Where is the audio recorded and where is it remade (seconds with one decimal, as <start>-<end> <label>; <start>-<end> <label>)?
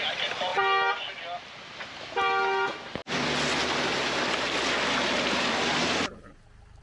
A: 0.0-6.8 recorded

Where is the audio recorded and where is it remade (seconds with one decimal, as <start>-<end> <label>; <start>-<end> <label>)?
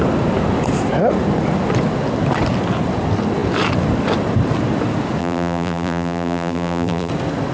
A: 0.0-5.2 recorded; 5.2-7.1 remade; 7.1-7.5 recorded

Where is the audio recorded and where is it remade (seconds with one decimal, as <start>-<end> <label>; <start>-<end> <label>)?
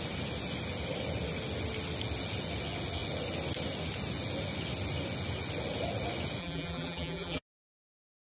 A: 0.0-6.4 recorded; 6.4-7.4 remade; 7.4-8.2 recorded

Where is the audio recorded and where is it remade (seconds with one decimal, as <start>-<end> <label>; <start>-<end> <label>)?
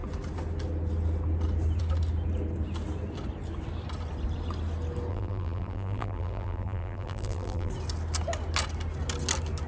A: 0.0-5.1 recorded; 5.1-7.7 remade; 7.7-9.7 recorded